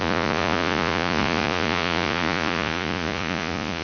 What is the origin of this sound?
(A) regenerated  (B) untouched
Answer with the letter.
A